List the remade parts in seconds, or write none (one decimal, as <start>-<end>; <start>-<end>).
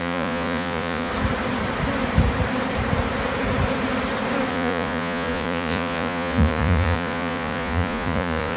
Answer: 0.0-1.1; 4.5-8.6